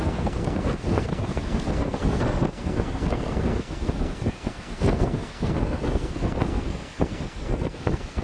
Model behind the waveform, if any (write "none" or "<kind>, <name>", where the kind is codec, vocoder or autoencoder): codec, SNAC